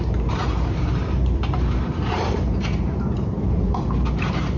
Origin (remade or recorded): remade